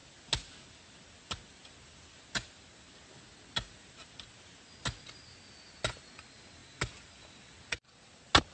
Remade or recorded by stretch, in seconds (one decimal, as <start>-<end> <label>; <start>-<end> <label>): 0.0-8.5 recorded